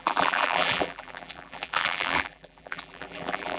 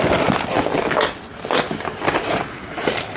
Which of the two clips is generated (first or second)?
first